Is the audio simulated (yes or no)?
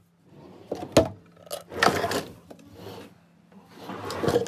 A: no